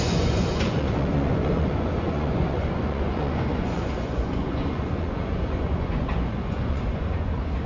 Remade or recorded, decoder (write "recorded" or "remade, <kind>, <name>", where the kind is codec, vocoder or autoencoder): remade, vocoder, Vocos